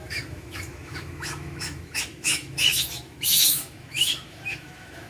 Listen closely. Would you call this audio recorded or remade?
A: remade